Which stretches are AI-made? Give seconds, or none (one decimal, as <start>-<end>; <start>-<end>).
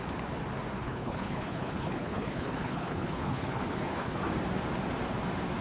0.8-4.2